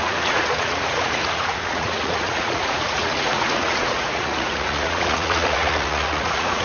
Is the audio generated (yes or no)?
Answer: yes